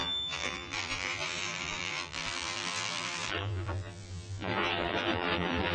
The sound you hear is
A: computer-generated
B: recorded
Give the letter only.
A